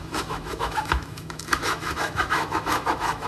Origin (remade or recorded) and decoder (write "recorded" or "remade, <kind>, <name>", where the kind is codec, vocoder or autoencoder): remade, autoencoder, DAC-VAE